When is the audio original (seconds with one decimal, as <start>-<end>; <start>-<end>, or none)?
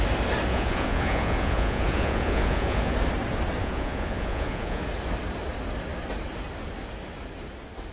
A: 0.0-0.5; 2.9-3.6; 4.8-7.9